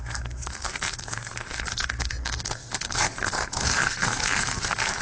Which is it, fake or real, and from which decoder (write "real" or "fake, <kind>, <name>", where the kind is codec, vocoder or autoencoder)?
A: fake, codec, SNAC